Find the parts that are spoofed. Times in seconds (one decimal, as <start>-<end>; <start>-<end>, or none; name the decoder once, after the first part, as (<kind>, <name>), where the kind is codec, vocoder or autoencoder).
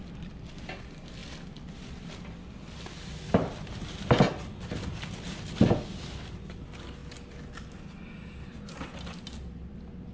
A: none